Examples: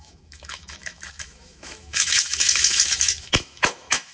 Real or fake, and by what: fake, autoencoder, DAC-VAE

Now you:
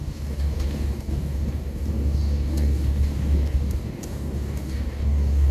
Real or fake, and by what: fake, codec, DAC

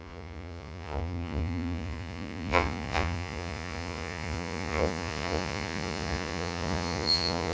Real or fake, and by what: fake, vocoder, Vocos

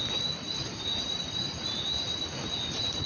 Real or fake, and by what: real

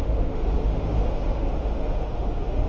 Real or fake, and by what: fake, autoencoder, DAC-VAE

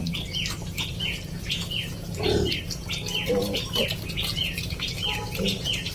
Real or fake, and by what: real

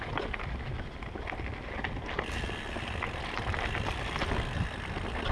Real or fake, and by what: real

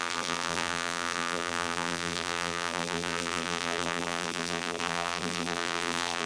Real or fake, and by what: fake, vocoder, BigVGAN v2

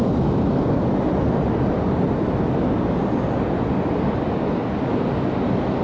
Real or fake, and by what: real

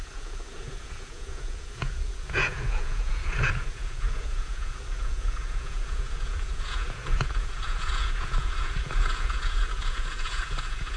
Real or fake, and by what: fake, vocoder, Vocos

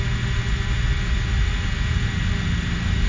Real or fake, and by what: real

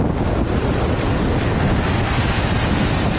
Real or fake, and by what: real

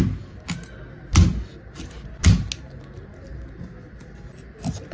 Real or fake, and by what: real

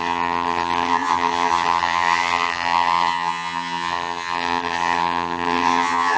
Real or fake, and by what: fake, vocoder, HiFi-GAN